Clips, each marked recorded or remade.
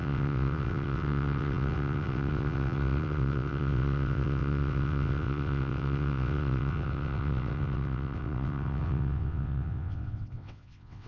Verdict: remade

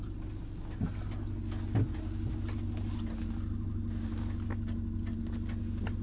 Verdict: recorded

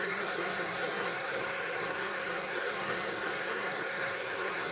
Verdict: remade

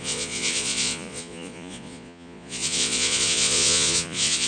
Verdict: remade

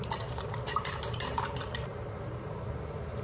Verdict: remade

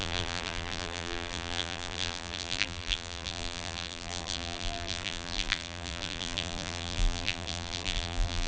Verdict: remade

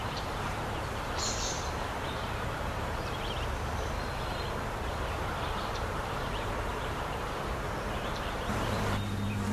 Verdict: remade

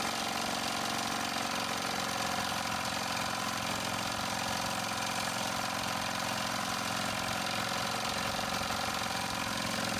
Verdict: recorded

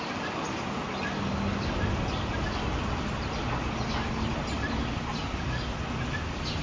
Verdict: recorded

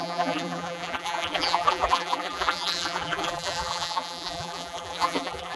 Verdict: remade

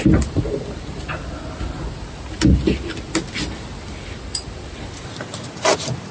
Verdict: recorded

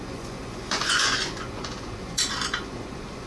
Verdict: remade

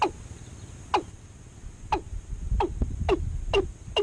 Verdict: recorded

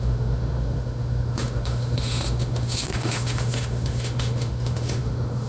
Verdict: remade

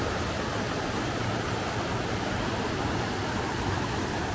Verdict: recorded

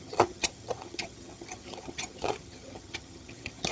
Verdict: remade